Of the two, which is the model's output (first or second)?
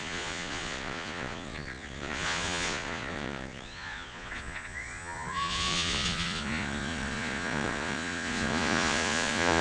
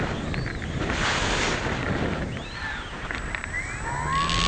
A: first